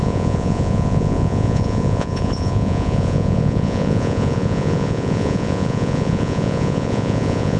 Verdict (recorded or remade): remade